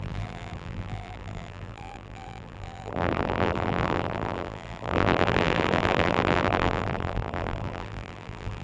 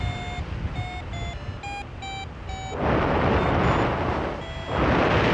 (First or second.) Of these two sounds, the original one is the second